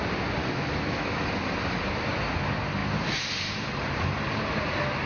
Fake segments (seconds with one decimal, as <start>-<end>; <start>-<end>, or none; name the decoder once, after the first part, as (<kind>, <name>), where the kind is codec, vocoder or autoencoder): 0.4-1.3 (autoencoder, DAC-VAE)